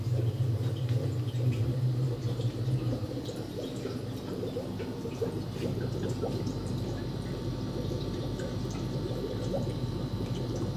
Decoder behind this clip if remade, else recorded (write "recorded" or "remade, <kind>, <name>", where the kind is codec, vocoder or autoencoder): remade, vocoder, BigVGAN v2